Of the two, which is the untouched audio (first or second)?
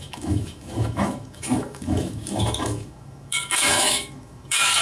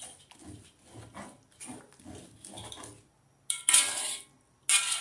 second